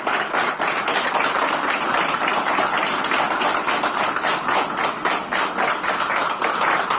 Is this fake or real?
real